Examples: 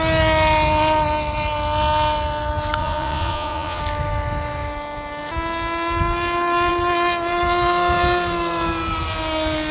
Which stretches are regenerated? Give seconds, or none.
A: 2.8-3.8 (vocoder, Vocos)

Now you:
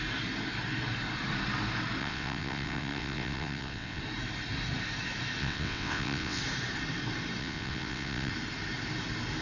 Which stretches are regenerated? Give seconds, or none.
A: 2.0-4.0 (vocoder, WaveNeXt); 5.4-6.4; 7.4-8.3

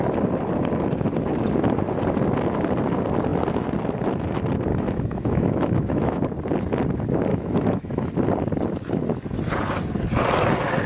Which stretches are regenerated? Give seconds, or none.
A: 4.7-6.2 (autoencoder, DAC-VAE); 7.3-8.1

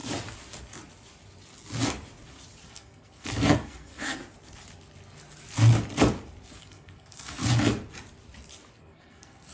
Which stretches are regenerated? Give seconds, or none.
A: 2.6-4.2 (codec, SNAC); 6.6-7.4; 8.7-9.5

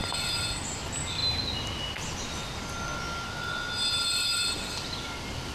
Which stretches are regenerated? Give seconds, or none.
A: none

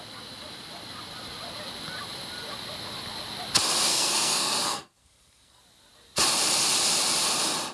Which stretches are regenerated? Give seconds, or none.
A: 3.9-5.6 (codec, SNAC)

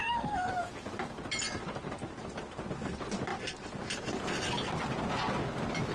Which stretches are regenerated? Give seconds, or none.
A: 0.0-0.5 (codec, SNAC)